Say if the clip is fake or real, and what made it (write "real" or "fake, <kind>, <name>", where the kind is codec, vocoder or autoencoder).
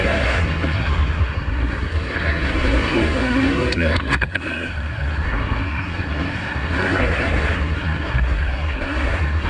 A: fake, codec, SNAC